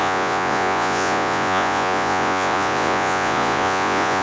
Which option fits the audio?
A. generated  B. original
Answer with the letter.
A